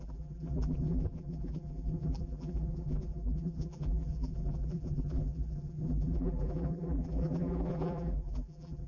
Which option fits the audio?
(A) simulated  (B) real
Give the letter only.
A